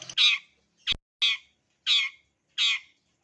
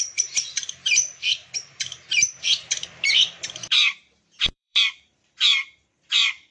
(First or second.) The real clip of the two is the first